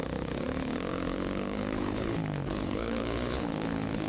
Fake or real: fake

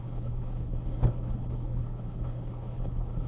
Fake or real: fake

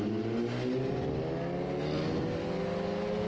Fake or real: real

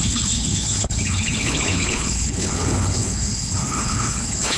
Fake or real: fake